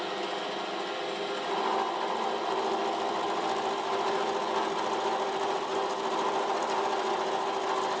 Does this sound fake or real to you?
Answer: real